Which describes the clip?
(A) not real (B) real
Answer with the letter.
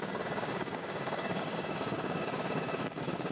A